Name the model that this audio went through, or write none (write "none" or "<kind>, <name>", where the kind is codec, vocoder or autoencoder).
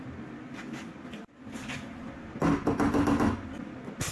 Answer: none